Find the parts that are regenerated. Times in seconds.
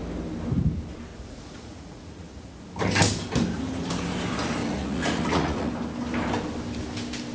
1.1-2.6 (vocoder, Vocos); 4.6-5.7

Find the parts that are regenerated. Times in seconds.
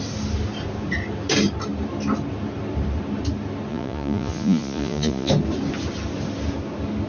3.7-5.3 (vocoder, Vocos)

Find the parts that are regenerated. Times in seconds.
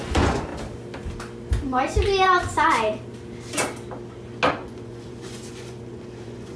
0.0-0.5 (vocoder, Vocos); 4.5-6.6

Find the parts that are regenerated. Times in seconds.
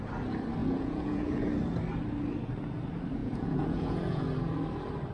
0.6-1.5 (vocoder, Vocos); 3.2-4.2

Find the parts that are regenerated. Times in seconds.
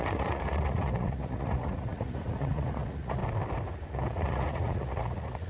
0.0-3.2 (vocoder, Vocos); 3.9-5.5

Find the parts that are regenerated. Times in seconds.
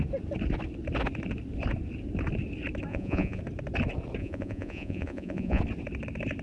2.9-3.4 (vocoder, Vocos); 4.2-5.6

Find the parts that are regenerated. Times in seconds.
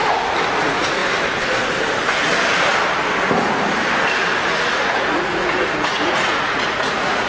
0.6-1.0 (vocoder, Vocos); 4.8-7.3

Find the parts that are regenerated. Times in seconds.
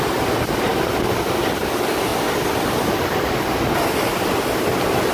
none